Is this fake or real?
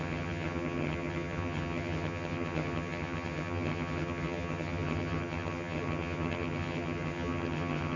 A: fake